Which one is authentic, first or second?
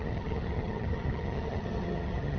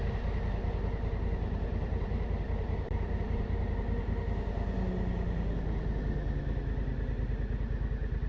second